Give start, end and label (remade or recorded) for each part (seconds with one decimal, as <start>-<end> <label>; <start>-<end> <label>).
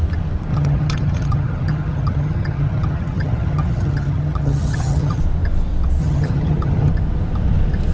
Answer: 0.0-0.5 recorded; 0.5-5.2 remade; 5.2-6.0 recorded; 6.0-6.9 remade; 6.9-7.9 recorded